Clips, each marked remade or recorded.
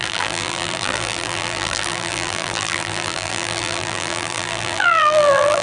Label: remade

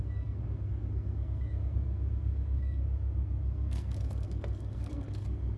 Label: remade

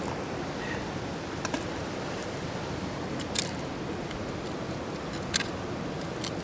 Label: recorded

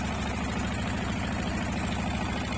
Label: recorded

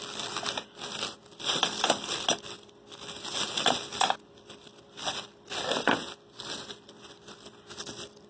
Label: recorded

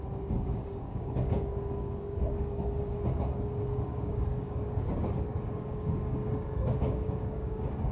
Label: remade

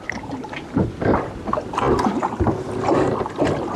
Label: recorded